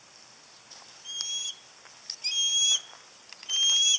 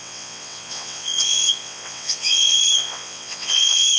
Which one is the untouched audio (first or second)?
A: first